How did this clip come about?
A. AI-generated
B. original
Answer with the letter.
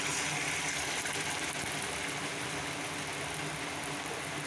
B